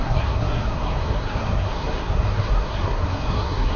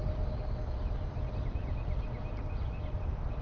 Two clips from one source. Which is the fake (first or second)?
first